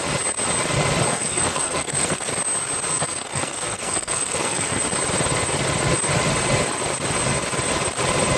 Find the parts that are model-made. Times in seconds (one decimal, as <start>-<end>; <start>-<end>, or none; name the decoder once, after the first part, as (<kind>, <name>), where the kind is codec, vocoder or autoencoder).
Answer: 1.1-2.3 (codec, SNAC); 2.9-4.8